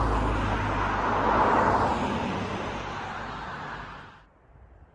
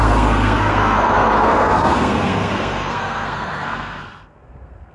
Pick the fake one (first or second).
second